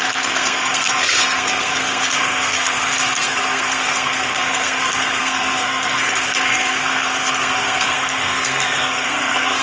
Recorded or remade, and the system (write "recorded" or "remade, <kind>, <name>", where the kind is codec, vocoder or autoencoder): remade, codec, SNAC